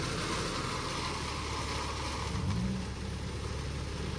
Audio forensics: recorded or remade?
recorded